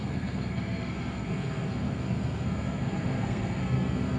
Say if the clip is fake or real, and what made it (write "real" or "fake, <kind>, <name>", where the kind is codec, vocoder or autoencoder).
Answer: fake, codec, SNAC